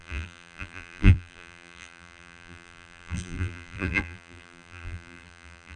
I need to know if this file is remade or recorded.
remade